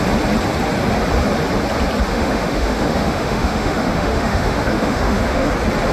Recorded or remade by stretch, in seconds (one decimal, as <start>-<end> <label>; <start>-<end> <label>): 0.0-2.1 recorded; 2.1-5.5 remade; 5.5-5.9 recorded